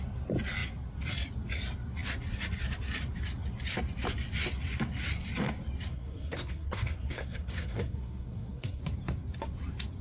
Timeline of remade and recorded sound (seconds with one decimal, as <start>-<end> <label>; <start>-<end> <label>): 0.0-5.9 recorded; 5.9-8.8 remade; 8.8-10.0 recorded